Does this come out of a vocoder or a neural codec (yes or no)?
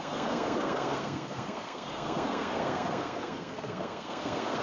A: yes